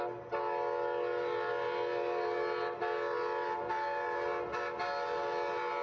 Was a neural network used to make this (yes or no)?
no